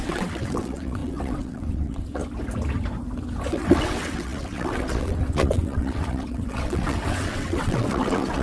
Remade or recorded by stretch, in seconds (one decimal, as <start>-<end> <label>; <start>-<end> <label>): 0.0-2.2 remade; 2.2-3.5 recorded; 3.5-8.4 remade